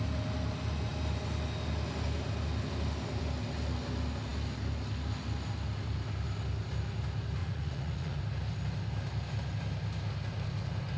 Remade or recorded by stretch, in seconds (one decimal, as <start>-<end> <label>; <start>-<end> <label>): 0.0-7.4 recorded; 7.4-8.2 remade; 8.2-11.0 recorded